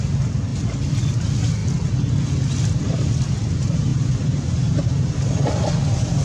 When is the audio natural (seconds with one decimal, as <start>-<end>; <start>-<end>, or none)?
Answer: 0.0-6.2